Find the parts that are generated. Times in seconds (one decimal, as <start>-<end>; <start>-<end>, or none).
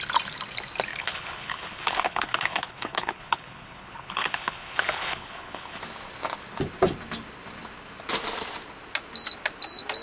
0.9-5.8